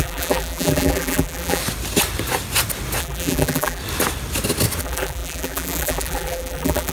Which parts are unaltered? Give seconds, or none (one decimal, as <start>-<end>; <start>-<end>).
1.6-3.0; 3.8-4.8